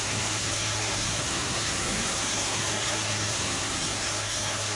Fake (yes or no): yes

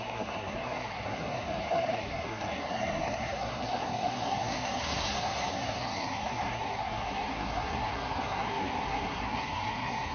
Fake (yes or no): yes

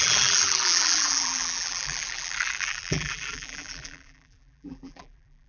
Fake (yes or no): yes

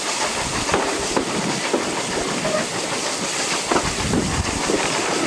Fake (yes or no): no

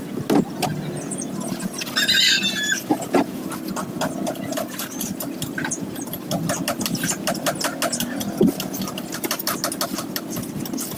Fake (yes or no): no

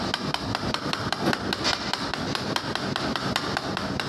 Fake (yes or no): no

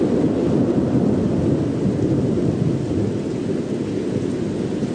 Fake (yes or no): no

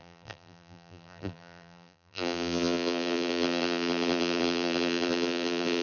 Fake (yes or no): yes